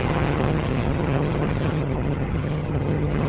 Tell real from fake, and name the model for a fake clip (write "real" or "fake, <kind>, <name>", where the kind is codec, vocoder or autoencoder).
fake, vocoder, HiFi-GAN